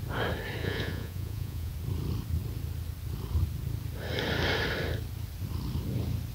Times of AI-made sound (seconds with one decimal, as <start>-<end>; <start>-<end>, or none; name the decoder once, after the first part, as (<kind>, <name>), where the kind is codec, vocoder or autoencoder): 0.6-1.7 (vocoder, Vocos)